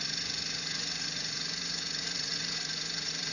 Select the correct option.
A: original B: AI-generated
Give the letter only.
B